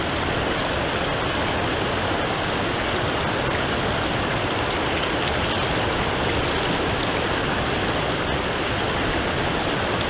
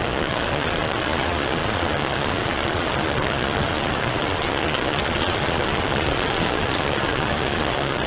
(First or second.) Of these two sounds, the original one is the first